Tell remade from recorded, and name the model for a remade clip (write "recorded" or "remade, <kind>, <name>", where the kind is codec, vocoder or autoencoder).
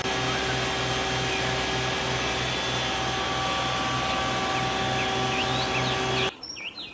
recorded